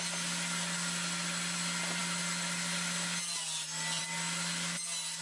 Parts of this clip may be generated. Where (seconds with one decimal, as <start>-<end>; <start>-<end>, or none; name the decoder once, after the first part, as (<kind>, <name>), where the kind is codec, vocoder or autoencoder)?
none